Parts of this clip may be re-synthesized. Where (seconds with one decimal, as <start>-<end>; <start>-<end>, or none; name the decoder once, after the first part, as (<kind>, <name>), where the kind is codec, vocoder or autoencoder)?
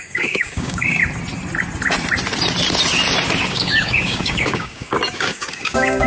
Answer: 0.0-1.0 (codec, DAC); 3.5-6.1